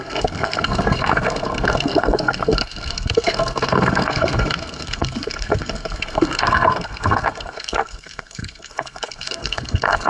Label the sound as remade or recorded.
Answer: remade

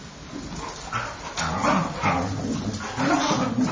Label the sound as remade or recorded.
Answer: recorded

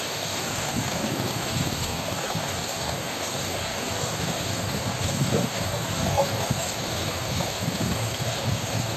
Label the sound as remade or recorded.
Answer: remade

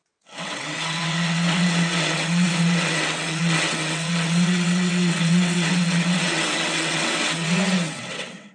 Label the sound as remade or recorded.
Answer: remade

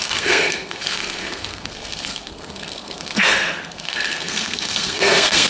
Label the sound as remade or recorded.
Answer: remade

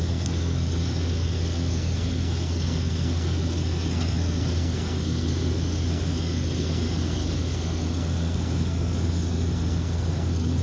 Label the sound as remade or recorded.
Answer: remade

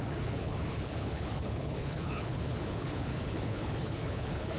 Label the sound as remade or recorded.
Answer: remade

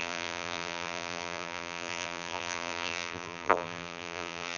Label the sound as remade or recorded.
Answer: remade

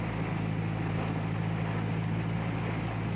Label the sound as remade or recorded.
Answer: recorded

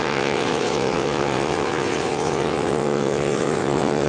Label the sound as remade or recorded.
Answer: remade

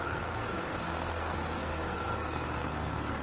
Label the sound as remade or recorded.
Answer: remade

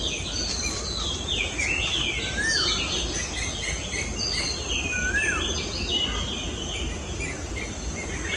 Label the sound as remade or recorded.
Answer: recorded